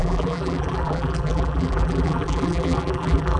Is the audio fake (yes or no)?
yes